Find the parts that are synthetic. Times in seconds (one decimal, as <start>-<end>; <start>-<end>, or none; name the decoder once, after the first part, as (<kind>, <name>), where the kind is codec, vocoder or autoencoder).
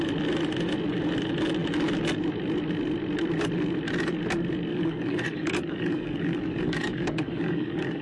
4.7-8.0 (codec, DAC)